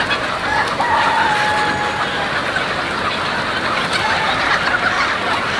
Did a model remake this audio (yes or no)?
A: no